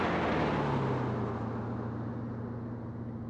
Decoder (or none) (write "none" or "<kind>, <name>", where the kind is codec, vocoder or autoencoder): none